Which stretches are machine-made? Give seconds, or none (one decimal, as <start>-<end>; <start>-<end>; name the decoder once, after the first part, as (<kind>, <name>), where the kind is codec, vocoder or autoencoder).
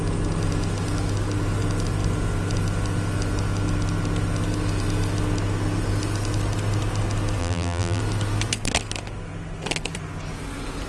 7.4-8.0 (vocoder, BigVGAN v2)